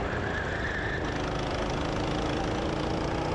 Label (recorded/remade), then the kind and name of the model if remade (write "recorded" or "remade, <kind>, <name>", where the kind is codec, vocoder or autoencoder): recorded